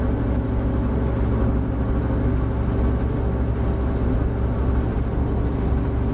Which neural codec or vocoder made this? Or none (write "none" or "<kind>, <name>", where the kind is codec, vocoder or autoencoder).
none